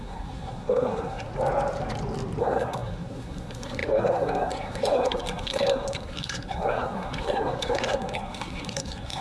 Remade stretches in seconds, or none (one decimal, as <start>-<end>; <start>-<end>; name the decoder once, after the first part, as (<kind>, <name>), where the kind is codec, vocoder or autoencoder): 0.0-1.3 (codec, SNAC); 2.4-9.2